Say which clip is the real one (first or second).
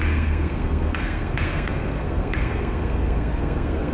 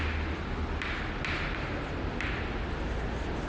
second